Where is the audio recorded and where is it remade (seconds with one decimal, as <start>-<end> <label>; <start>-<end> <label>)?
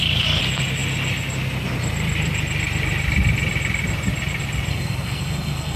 0.0-4.7 recorded; 4.7-5.8 remade